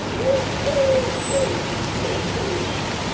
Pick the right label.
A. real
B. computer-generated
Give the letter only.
A